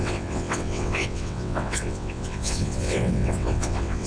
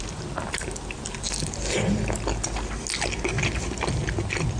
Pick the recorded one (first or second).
second